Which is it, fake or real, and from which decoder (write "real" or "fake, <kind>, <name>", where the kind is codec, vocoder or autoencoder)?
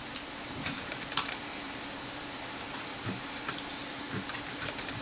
fake, vocoder, BigVGAN v2